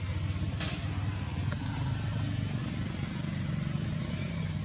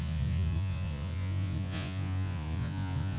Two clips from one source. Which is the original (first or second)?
first